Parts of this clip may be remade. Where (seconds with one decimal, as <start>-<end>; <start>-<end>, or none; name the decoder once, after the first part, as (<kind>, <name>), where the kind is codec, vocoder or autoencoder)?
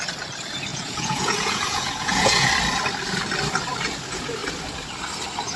0.7-2.5 (vocoder, Vocos)